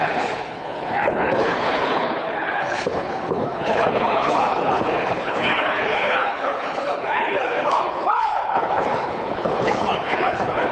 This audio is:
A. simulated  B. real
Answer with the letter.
A